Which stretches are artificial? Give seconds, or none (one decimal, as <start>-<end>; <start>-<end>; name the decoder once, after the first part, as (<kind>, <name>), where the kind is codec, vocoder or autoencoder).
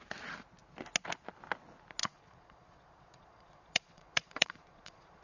2.0-5.2 (vocoder, Vocos)